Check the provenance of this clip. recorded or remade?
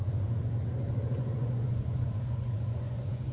remade